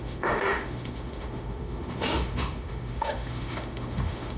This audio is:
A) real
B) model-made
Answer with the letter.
B